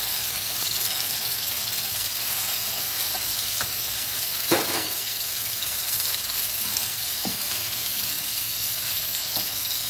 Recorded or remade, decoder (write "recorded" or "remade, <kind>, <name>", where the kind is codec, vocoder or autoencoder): remade, codec, SNAC